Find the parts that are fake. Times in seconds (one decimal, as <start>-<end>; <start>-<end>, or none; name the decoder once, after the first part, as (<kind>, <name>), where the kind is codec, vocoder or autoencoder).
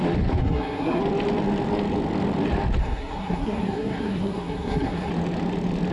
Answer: 0.4-1.0 (codec, SNAC); 2.8-5.1